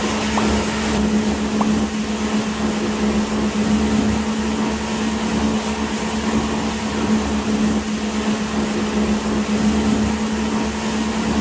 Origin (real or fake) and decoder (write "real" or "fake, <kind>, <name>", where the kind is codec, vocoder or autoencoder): real